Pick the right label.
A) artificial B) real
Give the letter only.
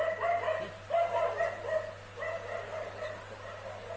B